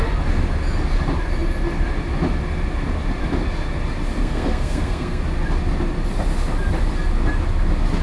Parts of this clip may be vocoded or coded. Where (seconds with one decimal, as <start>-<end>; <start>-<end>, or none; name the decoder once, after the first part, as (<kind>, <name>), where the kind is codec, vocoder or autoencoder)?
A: 4.2-5.2 (codec, SNAC)

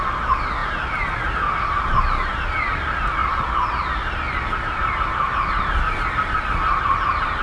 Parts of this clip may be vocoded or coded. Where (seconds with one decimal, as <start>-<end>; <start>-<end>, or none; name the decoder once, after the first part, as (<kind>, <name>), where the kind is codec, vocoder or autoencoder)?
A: none

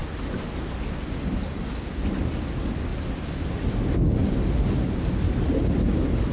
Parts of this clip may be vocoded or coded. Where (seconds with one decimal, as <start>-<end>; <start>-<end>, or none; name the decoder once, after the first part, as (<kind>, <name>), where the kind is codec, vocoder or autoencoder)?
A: none

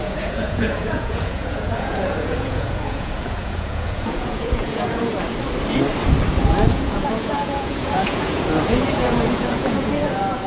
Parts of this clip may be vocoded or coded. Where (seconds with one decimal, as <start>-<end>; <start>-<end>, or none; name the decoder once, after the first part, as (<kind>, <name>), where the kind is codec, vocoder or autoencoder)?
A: 0.0-5.1 (vocoder, Vocos); 6.4-10.5

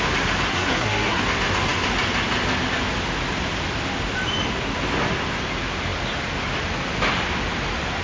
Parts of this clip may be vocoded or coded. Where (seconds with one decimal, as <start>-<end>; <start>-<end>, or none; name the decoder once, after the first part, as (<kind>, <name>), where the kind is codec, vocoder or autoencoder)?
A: 0.5-1.2 (codec, SNAC)

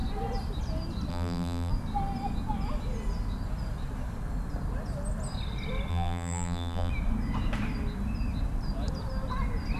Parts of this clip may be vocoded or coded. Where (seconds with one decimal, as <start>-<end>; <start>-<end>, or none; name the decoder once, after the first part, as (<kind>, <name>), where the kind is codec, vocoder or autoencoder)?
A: 1.1-1.7 (vocoder, BigVGAN v2); 5.9-6.9

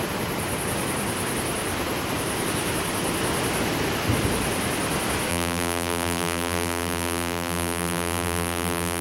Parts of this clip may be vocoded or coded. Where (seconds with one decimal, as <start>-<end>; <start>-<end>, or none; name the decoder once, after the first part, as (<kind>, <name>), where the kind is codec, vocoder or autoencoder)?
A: 5.3-9.0 (vocoder, BigVGAN v2)